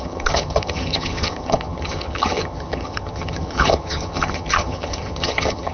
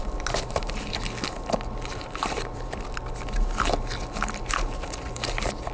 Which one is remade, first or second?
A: first